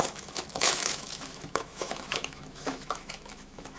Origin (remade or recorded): remade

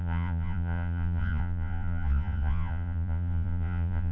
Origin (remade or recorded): remade